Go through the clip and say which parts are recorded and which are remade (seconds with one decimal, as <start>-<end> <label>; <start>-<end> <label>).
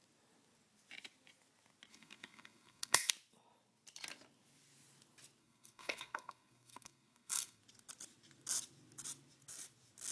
0.0-1.9 recorded; 1.9-3.1 remade; 3.1-5.4 recorded; 5.4-7.6 remade; 7.6-10.1 recorded